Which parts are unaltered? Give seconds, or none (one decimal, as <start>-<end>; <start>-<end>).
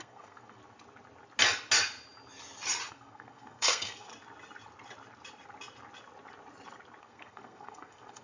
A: 0.6-2.9; 4.1-7.0